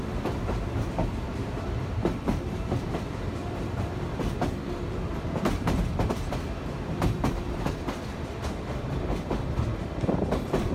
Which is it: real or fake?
fake